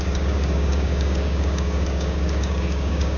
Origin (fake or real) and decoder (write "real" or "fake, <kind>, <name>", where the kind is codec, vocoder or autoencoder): fake, codec, DAC